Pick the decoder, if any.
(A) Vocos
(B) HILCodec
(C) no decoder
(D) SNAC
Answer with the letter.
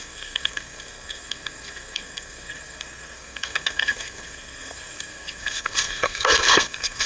D